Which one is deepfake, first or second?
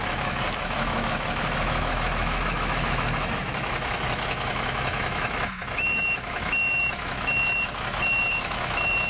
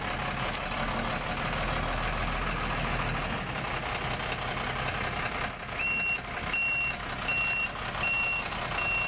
first